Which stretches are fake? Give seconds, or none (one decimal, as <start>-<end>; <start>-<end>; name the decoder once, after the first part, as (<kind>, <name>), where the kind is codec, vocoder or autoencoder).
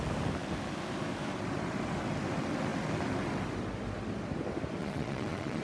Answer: 4.8-5.6 (vocoder, Vocos)